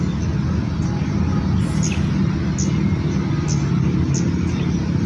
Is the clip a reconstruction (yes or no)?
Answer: no